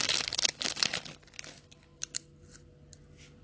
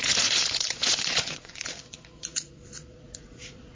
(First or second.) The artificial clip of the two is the second